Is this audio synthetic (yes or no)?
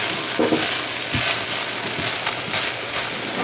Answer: no